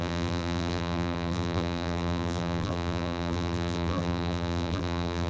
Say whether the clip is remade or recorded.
remade